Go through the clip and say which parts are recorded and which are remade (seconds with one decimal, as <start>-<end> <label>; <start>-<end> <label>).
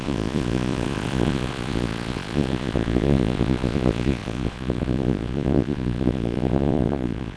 0.0-7.4 remade